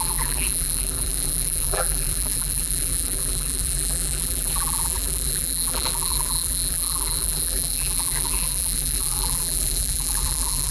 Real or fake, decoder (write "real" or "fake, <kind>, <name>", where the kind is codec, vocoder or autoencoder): fake, vocoder, BigVGAN v2